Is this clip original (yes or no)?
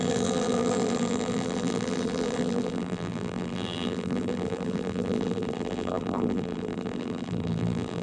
no